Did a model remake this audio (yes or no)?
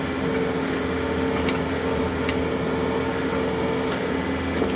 no